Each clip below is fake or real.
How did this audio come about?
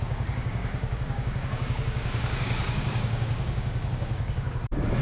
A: fake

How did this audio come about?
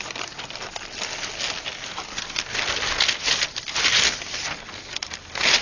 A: real